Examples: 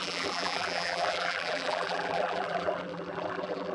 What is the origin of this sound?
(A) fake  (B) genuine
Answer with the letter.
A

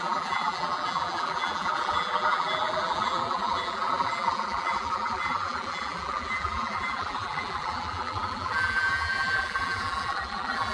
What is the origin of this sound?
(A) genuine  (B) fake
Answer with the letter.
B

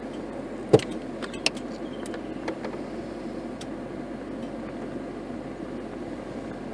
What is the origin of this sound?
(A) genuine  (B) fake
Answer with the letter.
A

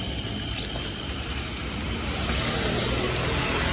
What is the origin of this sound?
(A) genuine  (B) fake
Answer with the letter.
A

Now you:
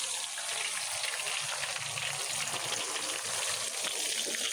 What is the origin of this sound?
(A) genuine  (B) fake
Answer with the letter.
A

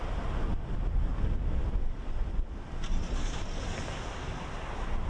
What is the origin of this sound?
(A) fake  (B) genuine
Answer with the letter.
B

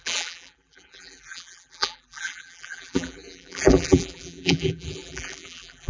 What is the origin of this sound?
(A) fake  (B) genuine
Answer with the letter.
A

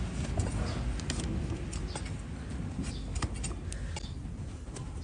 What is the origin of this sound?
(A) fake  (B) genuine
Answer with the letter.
B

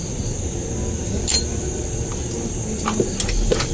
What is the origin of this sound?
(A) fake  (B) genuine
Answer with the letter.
B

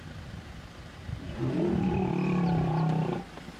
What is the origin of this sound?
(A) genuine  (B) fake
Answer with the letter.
B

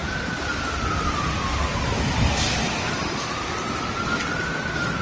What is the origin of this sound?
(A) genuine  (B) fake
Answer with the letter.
A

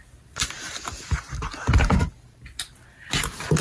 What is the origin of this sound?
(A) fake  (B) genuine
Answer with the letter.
B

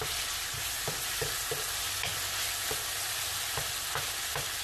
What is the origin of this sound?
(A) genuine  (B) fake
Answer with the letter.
B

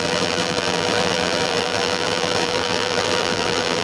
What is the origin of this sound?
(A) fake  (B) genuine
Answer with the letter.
A